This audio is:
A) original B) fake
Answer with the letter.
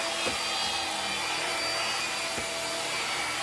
A